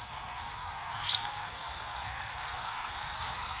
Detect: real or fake fake